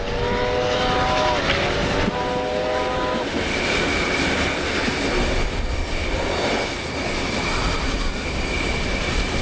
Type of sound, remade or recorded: recorded